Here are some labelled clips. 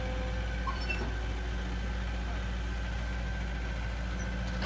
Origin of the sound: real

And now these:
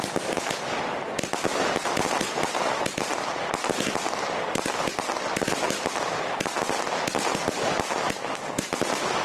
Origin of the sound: real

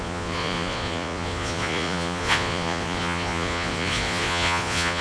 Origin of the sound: fake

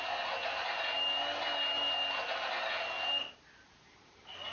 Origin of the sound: real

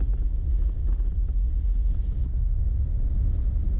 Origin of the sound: real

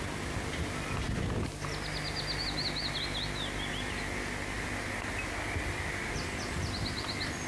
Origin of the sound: real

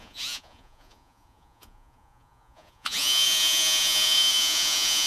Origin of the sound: fake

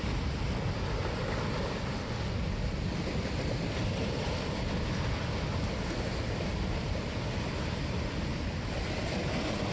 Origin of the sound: real